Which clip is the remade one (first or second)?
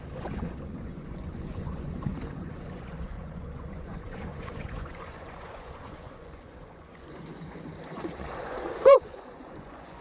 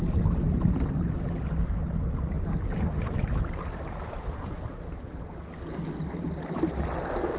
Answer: first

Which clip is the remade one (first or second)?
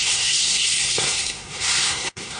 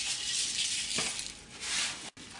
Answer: first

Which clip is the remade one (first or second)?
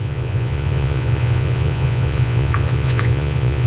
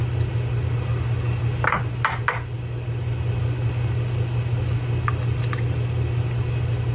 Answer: first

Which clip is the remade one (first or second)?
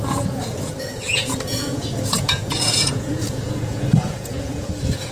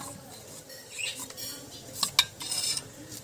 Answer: first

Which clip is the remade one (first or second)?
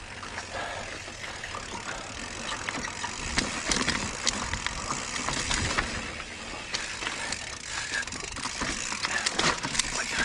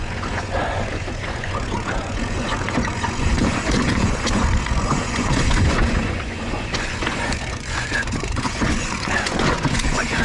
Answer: second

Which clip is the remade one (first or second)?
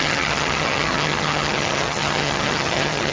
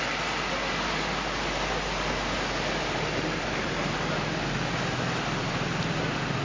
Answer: first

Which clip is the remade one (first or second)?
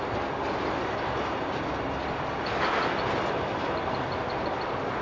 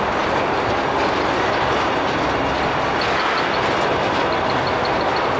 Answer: first